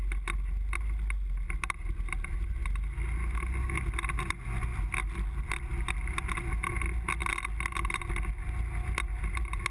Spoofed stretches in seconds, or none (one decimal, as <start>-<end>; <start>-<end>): none